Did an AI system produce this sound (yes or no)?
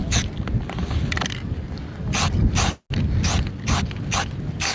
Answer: no